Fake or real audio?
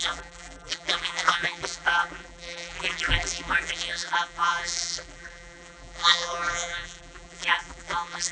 fake